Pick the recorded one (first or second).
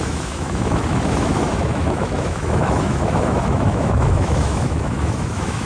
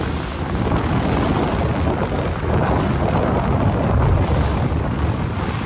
second